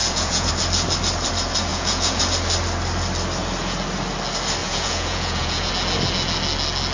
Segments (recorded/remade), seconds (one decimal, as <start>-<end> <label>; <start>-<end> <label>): 0.0-0.5 remade; 0.5-1.7 recorded; 1.7-2.2 remade; 2.2-4.6 recorded; 4.6-5.7 remade; 5.7-6.9 recorded